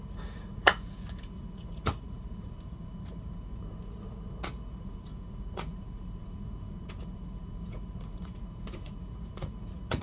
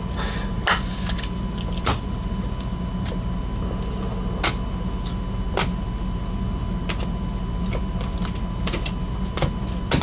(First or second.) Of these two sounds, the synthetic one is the first